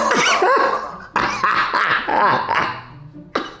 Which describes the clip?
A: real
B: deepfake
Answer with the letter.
A